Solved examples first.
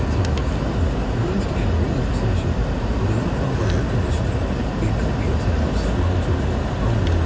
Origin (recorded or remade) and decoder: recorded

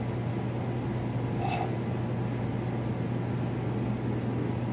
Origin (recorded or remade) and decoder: recorded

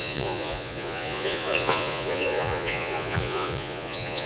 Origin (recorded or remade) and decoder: remade, vocoder, Vocos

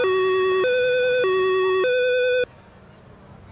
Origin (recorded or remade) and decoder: recorded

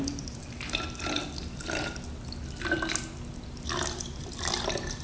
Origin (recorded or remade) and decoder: recorded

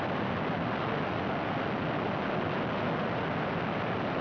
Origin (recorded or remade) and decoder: recorded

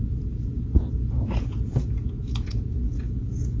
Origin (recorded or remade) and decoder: remade, vocoder, Vocos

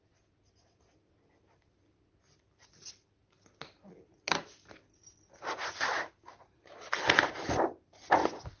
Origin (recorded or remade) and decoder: recorded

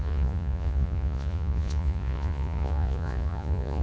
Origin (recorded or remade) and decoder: remade, vocoder, Vocos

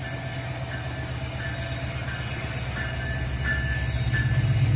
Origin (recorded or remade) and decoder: recorded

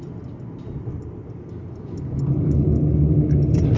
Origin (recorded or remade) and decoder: recorded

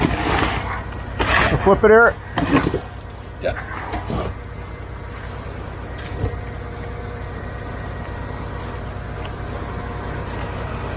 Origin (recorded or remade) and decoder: recorded